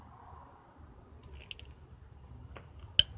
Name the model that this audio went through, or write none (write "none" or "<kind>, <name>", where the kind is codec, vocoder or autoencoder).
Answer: none